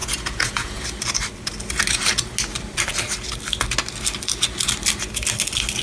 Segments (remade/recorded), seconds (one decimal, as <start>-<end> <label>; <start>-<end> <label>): 0.0-0.8 remade; 0.8-5.8 recorded